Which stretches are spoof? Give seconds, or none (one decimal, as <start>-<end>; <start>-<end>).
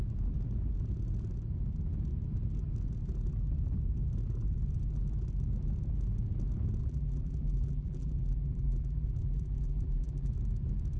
6.8-10.3